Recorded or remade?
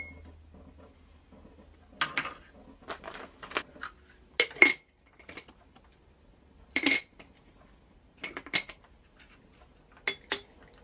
recorded